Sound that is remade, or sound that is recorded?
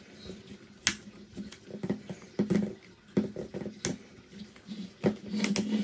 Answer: recorded